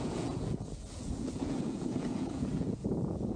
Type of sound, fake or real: fake